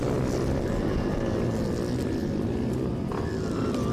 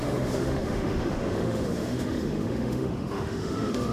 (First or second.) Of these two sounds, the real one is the first